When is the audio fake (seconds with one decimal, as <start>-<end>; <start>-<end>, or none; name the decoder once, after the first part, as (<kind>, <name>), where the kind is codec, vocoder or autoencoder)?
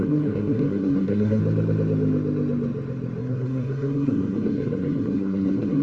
0.0-1.4 (codec, SNAC); 3.2-5.8